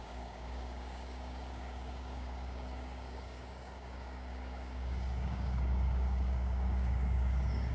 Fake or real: fake